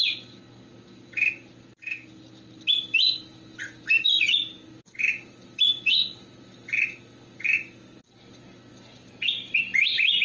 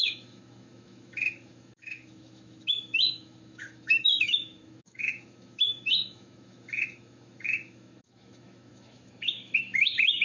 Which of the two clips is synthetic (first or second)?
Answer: second